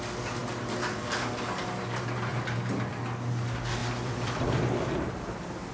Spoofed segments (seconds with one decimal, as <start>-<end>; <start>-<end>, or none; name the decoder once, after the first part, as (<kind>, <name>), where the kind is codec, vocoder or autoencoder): 2.3-2.9 (vocoder, BigVGAN v2); 3.8-4.6